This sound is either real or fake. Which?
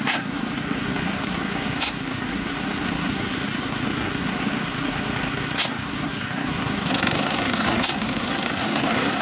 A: fake